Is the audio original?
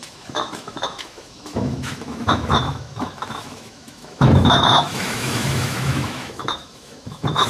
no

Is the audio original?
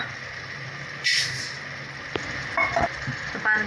yes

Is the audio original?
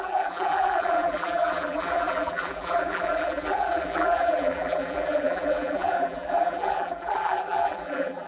no